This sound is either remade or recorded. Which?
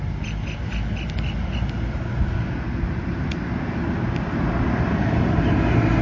recorded